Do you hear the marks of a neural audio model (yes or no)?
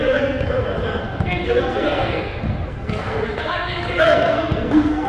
yes